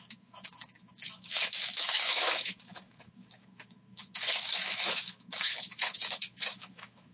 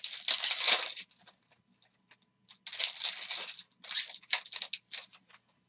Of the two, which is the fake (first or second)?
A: first